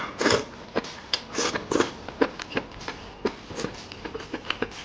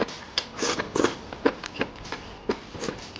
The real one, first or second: first